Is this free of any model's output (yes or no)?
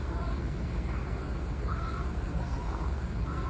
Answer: no